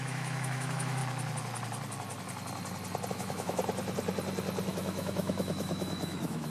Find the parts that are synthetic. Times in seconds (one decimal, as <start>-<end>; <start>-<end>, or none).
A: 0.0-1.0; 3.1-3.6; 4.7-6.5